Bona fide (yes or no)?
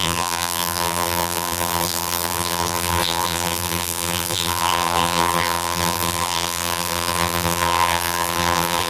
no